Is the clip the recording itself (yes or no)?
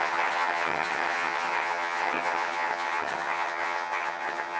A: no